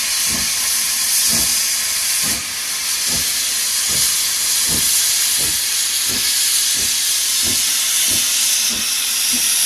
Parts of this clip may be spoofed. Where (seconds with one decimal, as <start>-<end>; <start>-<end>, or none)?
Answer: none